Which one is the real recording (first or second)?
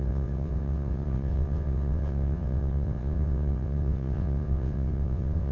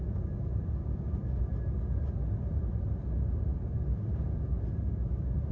second